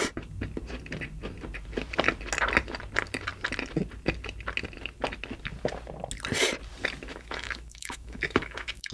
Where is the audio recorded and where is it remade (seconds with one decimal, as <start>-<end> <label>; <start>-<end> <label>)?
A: 0.0-7.1 recorded; 7.1-8.9 remade